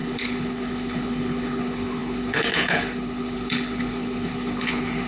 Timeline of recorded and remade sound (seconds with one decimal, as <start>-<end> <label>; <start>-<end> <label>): 0.0-5.1 remade